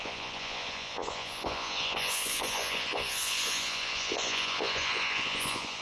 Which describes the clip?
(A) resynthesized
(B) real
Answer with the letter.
A